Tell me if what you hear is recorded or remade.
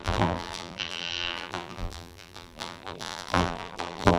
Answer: remade